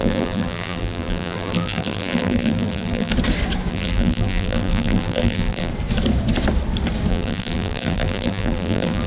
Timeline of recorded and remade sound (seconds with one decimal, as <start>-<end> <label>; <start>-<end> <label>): 0.0-3.1 remade; 3.1-3.7 recorded; 3.7-5.7 remade; 5.7-7.1 recorded; 7.1-9.1 remade